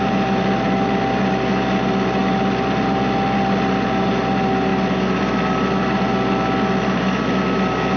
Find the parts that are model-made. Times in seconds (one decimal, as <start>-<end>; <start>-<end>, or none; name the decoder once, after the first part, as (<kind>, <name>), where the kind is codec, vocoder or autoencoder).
none